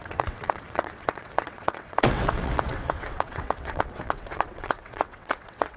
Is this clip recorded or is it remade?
remade